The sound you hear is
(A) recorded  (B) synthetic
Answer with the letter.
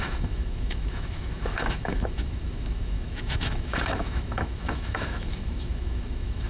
B